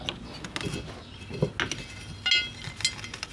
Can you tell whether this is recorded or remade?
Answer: recorded